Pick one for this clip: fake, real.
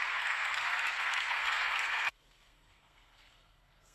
fake